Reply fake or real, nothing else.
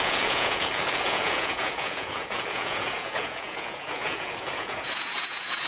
fake